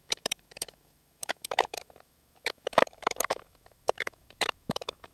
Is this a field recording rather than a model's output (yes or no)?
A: no